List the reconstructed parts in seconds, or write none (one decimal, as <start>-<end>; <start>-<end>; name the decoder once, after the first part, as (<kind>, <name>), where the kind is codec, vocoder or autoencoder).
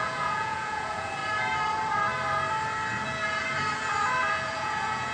0.0-1.2 (vocoder, Vocos); 4.3-5.1